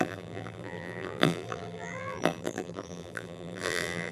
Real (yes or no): no